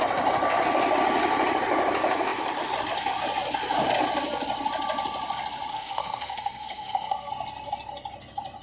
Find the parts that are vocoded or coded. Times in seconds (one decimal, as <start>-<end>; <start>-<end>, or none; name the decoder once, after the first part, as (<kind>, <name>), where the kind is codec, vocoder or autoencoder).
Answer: 5.7-7.3 (codec, SNAC)